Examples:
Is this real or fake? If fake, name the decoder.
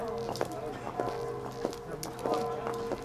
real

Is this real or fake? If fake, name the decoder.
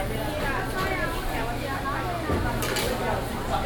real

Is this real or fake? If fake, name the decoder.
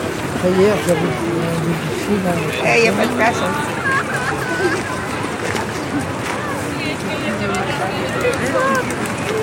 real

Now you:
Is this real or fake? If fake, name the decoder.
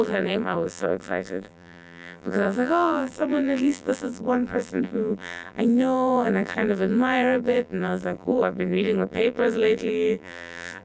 fake, vocoder, BigVGAN v2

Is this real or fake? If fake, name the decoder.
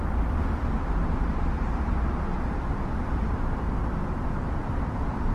real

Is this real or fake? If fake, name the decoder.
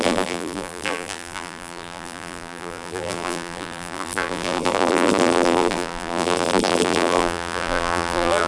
fake, vocoder, BigVGAN v2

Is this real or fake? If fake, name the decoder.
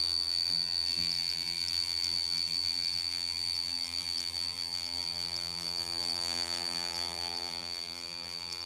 fake, vocoder, BigVGAN v2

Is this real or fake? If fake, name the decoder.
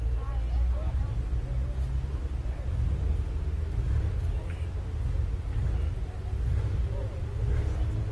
real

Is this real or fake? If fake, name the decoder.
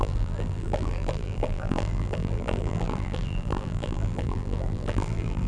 fake, vocoder, BigVGAN v2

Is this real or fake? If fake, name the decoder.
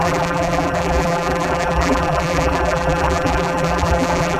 fake, vocoder, BigVGAN v2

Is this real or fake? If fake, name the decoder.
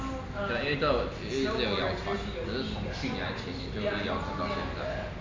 real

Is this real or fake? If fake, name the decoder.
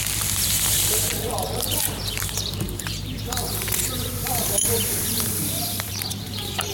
fake, vocoder, BigVGAN v2